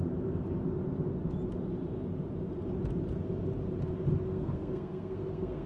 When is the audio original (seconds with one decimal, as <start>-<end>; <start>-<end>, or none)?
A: 0.0-4.3